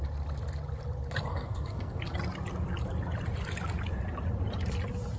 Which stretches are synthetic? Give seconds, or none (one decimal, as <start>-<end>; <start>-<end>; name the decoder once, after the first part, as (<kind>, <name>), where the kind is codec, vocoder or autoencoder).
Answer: 1.3-2.0 (codec, SNAC)